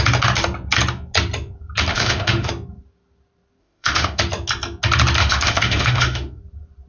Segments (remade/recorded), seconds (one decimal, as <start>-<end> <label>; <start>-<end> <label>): 0.0-1.9 recorded; 1.9-2.5 remade; 2.5-3.6 recorded; 3.6-4.2 remade; 4.2-5.2 recorded; 5.2-6.4 remade; 6.4-6.9 recorded